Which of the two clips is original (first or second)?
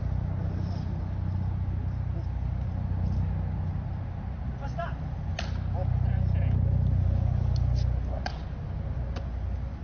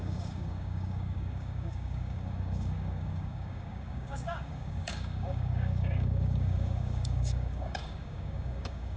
first